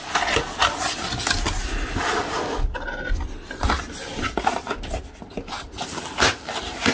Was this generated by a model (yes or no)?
no